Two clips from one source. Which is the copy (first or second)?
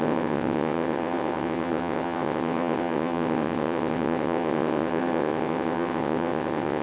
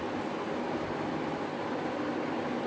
first